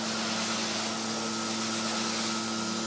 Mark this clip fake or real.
real